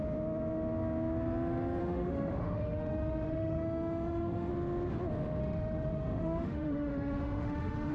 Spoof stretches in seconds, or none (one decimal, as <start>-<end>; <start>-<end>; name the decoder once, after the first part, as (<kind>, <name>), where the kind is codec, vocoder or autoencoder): 1.8-4.5 (autoencoder, DAC-VAE); 5.4-7.9